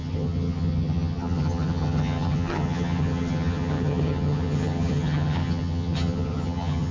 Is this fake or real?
fake